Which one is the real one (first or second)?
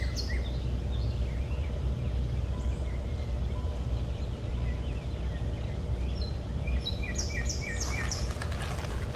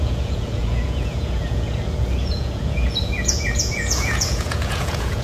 first